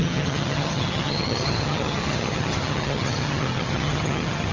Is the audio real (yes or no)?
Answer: no